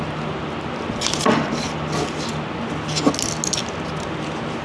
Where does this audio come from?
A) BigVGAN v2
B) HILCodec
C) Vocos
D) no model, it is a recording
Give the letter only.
D